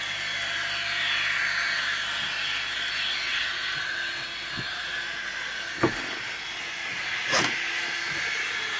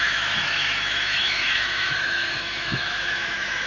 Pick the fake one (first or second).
second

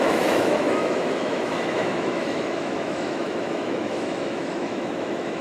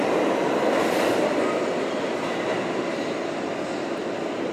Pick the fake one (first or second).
first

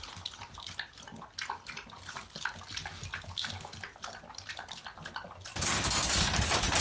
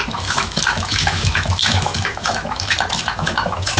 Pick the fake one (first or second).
second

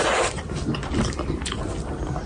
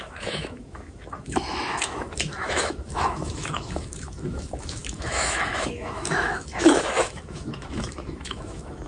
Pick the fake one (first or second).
second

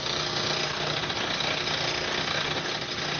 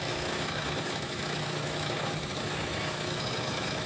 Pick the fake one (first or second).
second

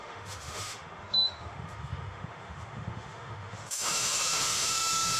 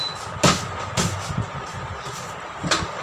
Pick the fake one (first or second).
first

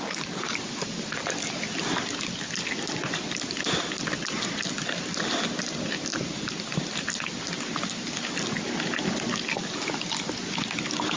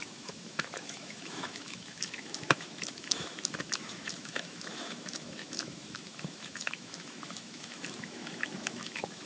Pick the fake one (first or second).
second